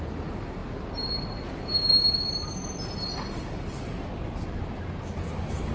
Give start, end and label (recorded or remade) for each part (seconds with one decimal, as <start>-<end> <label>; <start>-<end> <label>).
0.0-5.7 recorded